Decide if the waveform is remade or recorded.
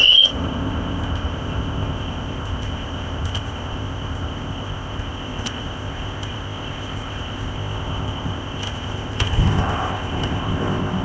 remade